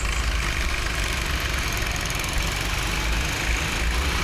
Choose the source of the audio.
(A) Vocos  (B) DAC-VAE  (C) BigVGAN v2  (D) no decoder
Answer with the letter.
D